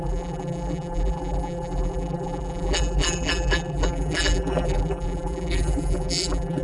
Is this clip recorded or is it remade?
remade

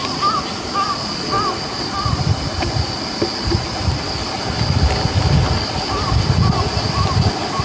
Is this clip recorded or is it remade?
recorded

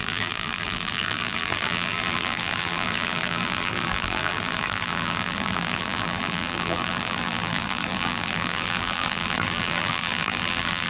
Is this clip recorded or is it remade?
remade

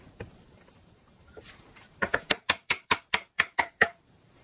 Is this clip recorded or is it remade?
remade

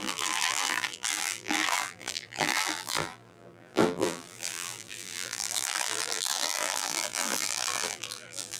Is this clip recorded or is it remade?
remade